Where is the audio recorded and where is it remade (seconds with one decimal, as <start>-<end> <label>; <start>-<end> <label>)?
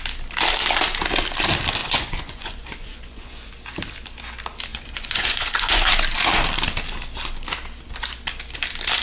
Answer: 0.0-1.8 recorded; 1.8-3.5 remade; 3.5-4.7 recorded; 4.7-5.9 remade; 5.9-9.0 recorded